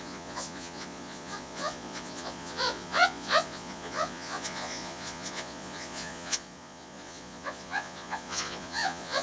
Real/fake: fake